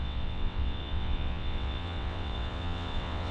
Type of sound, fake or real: fake